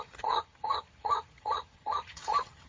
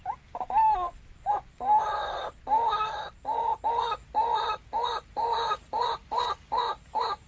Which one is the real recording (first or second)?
second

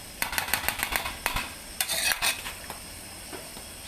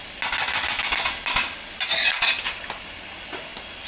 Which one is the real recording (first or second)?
second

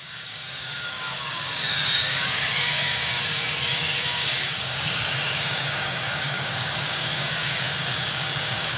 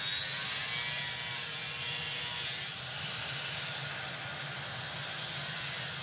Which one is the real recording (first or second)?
second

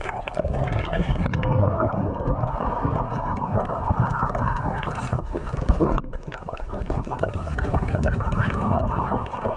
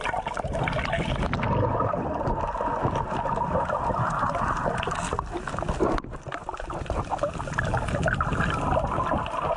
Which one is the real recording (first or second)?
second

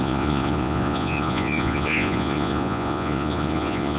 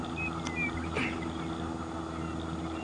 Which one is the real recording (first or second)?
second